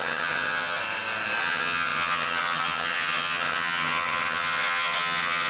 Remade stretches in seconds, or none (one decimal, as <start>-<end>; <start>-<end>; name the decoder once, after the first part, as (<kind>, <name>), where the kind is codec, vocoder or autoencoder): 0.0-0.8 (vocoder, HiFi-GAN); 1.4-5.5